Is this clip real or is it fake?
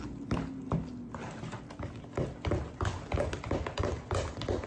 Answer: real